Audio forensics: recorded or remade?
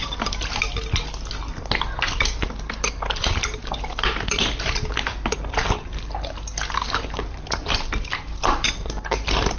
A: recorded